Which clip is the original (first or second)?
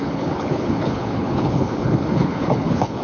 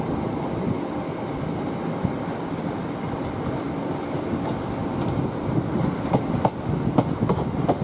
second